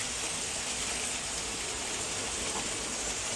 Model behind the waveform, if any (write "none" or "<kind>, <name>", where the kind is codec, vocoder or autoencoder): none